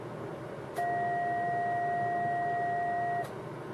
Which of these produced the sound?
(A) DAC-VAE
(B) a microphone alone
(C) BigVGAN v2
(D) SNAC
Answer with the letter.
B